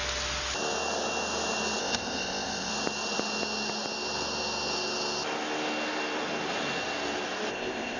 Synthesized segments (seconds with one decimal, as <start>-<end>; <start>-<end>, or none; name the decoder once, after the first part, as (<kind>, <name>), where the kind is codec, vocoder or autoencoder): 1.8-2.7 (codec, ZipCodec); 7.5-8.0